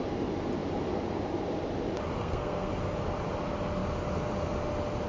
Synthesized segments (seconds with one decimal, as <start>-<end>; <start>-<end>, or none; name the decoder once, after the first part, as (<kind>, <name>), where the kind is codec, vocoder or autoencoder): 2.2-2.7 (codec, SNAC)